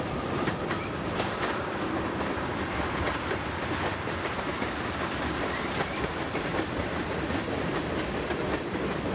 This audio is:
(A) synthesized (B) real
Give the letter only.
A